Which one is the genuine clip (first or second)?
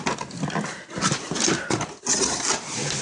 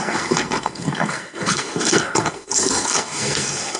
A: first